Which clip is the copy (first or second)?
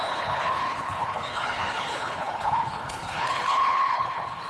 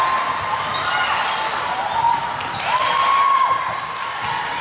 first